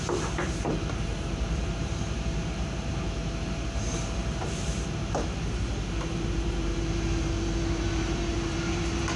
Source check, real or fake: fake